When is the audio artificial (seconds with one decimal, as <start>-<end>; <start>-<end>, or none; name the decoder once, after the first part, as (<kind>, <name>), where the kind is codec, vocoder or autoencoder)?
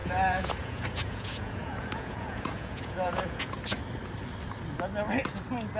0.0-3.5 (vocoder, Vocos)